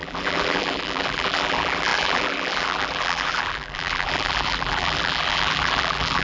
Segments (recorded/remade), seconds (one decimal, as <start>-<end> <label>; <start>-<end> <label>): 0.0-6.2 remade